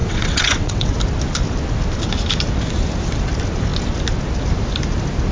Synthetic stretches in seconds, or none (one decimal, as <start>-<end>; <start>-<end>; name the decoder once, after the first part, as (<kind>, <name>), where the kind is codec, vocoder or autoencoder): 0.0-1.0 (vocoder, WaveNeXt)